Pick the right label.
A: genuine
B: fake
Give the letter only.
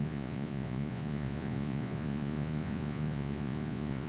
B